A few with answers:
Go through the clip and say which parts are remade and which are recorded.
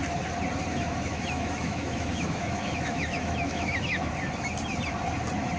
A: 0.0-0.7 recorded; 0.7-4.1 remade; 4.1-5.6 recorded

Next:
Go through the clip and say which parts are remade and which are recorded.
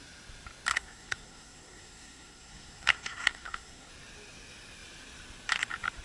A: 0.0-0.7 recorded; 0.7-3.9 remade; 3.9-6.0 recorded